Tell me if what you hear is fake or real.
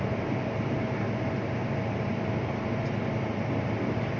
fake